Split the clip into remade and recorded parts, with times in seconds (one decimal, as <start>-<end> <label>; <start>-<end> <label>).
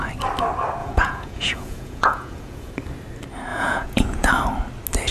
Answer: 0.0-0.8 recorded; 0.8-2.7 remade; 2.7-3.5 recorded; 3.5-4.3 remade; 4.3-5.1 recorded